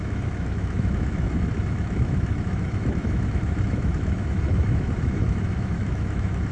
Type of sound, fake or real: fake